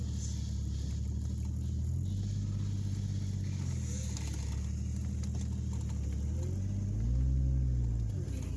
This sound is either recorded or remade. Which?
recorded